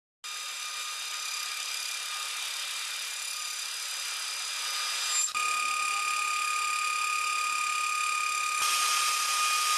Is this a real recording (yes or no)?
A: yes